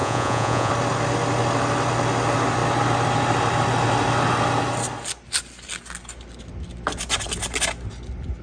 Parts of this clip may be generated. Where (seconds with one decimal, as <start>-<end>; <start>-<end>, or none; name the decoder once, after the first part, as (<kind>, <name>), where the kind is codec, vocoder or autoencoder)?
0.0-0.7 (vocoder, Vocos)